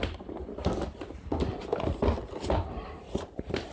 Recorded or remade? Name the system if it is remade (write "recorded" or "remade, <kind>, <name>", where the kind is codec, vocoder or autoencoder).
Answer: remade, vocoder, BigVGAN v2